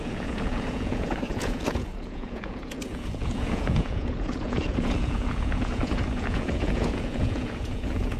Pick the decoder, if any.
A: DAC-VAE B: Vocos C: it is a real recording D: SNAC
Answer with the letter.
B